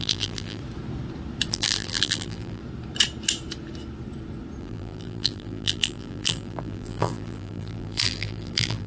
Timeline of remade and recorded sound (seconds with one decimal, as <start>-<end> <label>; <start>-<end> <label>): 0.0-0.6 remade; 0.6-1.5 recorded; 1.5-2.6 remade; 2.6-4.6 recorded; 4.6-8.9 remade